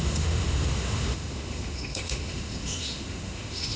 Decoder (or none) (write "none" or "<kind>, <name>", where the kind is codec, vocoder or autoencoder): autoencoder, DAC-VAE